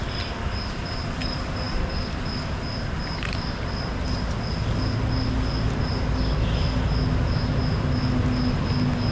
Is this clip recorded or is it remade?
recorded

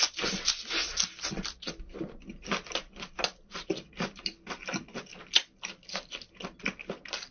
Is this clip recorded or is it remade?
recorded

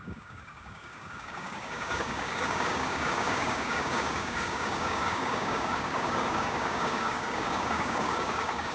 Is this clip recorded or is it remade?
remade